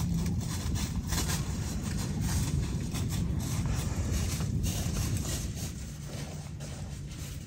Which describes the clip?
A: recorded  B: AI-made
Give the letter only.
B